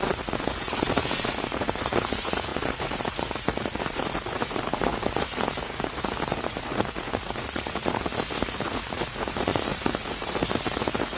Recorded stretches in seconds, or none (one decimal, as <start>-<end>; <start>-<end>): none